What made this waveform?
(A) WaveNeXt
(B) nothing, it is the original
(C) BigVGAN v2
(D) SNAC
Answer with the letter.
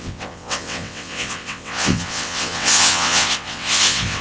A